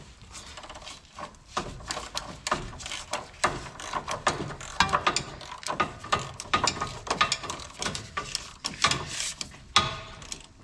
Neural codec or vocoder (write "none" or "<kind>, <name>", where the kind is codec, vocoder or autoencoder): none